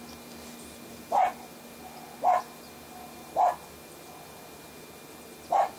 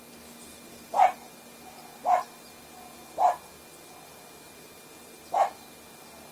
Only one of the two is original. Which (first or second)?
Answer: second